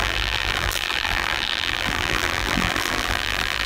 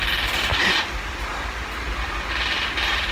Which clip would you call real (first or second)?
second